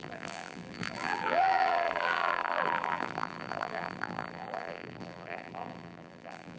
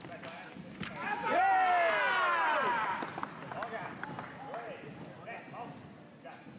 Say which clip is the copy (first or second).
first